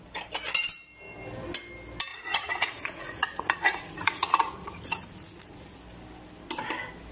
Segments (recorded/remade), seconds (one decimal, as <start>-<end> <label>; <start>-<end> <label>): 0.0-2.1 recorded; 2.1-5.8 remade; 5.8-7.1 recorded